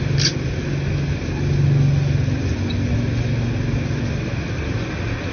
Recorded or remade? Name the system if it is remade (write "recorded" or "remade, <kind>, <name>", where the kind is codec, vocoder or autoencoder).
recorded